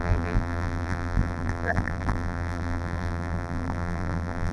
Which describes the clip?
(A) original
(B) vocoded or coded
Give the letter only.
B